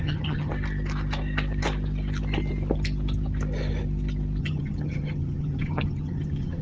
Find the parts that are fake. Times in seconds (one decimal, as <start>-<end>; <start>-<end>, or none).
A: 0.0-0.5; 4.4-6.6